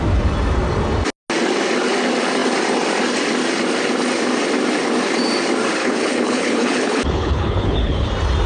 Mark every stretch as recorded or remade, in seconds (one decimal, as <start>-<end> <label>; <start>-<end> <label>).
0.0-5.8 recorded; 5.8-8.1 remade; 8.1-8.5 recorded